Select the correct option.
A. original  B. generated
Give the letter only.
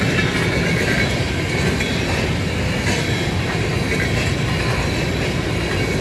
A